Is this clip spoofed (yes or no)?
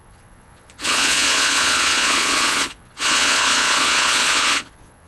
yes